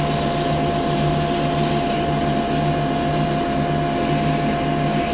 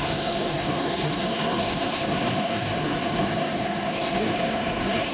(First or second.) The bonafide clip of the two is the first